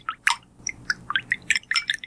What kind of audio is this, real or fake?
fake